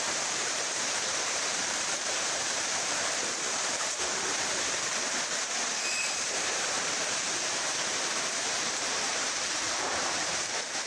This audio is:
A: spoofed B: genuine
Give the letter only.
A